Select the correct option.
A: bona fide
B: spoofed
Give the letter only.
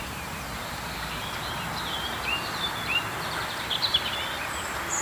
B